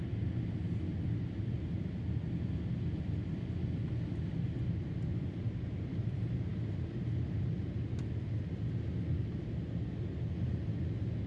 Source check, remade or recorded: recorded